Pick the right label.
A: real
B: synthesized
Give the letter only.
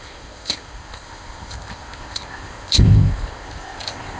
B